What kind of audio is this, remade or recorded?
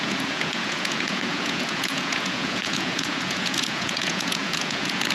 remade